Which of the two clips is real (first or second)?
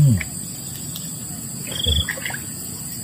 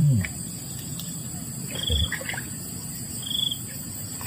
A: first